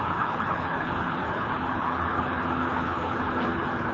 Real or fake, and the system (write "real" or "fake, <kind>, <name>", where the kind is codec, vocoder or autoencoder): fake, codec, HILCodec